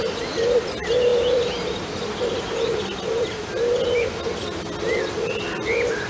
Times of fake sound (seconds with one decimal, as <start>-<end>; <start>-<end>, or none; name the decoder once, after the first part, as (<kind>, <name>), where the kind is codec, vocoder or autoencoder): none

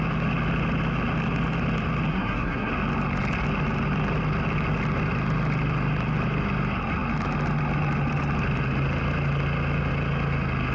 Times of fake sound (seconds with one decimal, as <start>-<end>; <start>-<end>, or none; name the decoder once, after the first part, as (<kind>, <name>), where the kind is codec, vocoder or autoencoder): 2.1-2.7 (codec, SNAC)

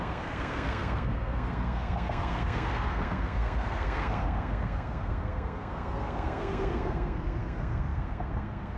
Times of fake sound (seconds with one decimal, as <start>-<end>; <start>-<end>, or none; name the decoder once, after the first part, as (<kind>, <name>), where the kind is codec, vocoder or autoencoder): 0.0-8.8 (codec, SNAC)